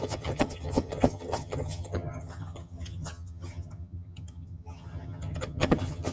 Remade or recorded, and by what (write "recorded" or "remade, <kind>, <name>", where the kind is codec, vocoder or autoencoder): remade, vocoder, HiFi-GAN